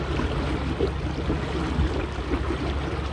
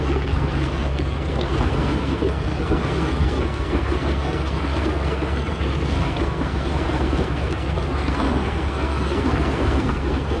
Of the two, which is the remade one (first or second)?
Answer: second